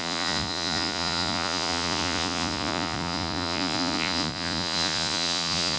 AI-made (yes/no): yes